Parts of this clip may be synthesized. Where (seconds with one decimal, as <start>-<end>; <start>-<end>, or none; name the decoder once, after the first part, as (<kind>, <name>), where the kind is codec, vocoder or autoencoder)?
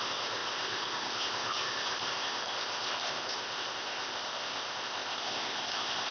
0.0-6.1 (codec, ZipCodec)